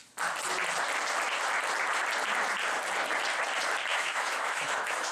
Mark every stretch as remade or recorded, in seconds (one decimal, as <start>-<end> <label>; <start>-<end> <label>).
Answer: 0.0-3.9 recorded; 3.9-5.1 remade